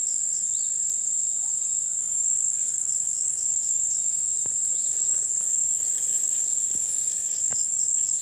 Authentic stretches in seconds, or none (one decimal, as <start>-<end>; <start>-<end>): 0.0-2.0; 3.8-4.9